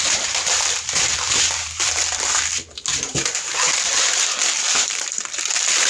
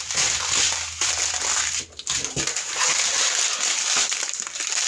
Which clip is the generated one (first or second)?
first